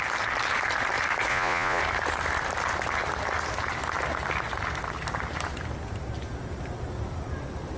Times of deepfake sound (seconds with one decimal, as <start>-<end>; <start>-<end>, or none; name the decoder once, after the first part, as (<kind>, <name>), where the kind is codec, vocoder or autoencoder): 1.3-1.8 (vocoder, Vocos)